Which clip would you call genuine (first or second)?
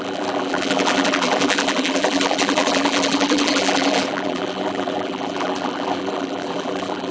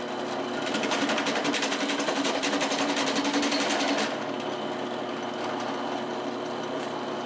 second